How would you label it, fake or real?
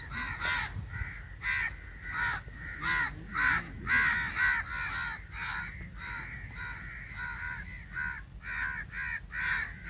real